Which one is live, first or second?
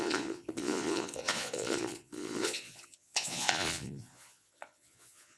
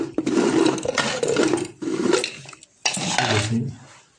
second